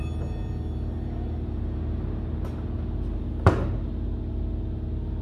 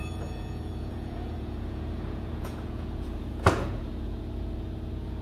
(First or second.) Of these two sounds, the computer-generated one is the second